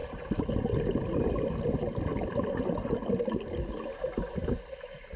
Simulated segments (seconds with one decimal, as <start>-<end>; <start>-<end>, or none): none